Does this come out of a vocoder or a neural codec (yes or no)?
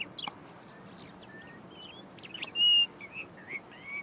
no